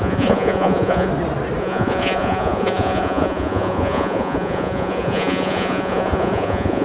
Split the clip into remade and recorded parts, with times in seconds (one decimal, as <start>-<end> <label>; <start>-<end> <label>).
0.0-1.1 remade; 1.1-1.6 recorded; 1.6-6.8 remade